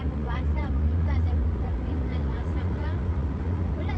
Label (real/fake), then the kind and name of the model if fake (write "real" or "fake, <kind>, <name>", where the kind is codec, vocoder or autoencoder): fake, vocoder, Vocos